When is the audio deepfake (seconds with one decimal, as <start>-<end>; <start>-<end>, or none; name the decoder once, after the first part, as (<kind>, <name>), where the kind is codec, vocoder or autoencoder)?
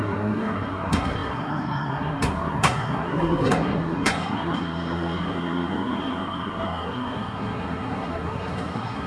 0.0-9.1 (codec, SNAC)